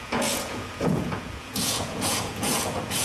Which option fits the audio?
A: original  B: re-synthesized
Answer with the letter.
B